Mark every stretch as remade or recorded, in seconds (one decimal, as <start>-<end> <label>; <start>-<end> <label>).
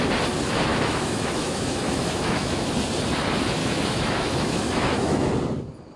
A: 0.0-0.7 recorded; 0.7-2.7 remade; 2.7-3.6 recorded; 3.6-5.3 remade; 5.3-6.0 recorded